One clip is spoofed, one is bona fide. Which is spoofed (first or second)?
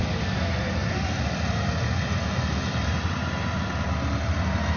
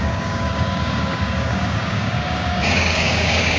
second